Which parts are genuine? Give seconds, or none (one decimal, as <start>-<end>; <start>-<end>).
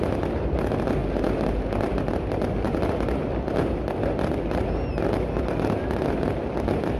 0.0-7.0